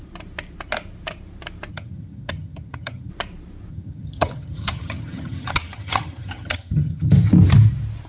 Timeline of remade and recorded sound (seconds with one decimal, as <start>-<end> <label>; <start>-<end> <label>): 0.0-1.7 recorded; 1.7-3.1 remade; 3.1-3.7 recorded; 3.7-7.1 remade; 7.1-8.1 recorded